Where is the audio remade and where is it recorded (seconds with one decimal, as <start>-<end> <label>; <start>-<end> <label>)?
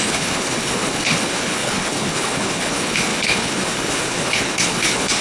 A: 0.0-5.2 remade